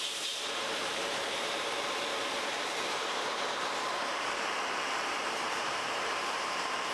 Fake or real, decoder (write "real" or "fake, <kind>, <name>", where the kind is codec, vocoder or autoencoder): fake, vocoder, BigVGAN v2